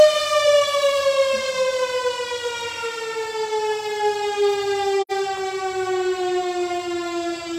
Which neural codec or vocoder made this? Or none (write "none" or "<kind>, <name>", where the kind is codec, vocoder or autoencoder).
none